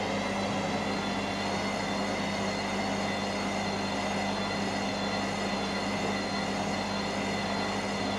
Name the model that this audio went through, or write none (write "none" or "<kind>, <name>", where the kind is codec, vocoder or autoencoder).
none